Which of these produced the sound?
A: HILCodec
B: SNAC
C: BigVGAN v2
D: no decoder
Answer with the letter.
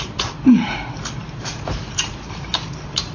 C